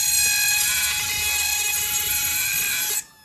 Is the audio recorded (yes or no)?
yes